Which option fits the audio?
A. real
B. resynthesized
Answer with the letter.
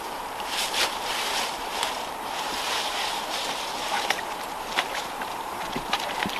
B